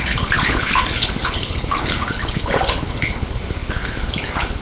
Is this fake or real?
fake